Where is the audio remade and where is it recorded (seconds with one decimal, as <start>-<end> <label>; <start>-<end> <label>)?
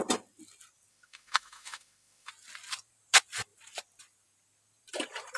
0.0-0.9 recorded; 0.9-2.3 remade; 2.3-5.4 recorded